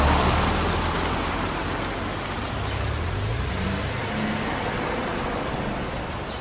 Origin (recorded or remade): recorded